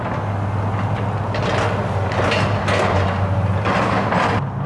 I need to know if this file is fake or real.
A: real